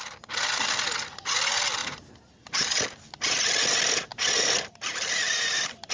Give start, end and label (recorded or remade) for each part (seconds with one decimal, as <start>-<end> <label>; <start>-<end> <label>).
0.0-1.8 recorded; 1.8-2.8 remade; 2.8-4.1 recorded; 4.1-5.9 remade